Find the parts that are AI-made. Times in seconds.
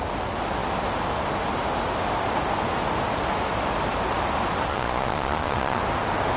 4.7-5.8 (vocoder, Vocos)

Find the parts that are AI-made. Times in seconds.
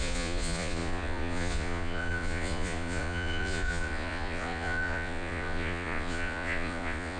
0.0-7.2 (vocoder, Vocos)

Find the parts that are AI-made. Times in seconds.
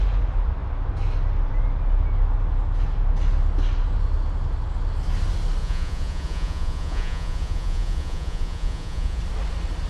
5.6-9.2 (vocoder, Vocos)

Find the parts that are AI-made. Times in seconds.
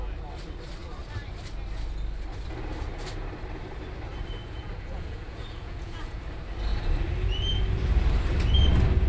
4.4-6.2 (vocoder, Vocos)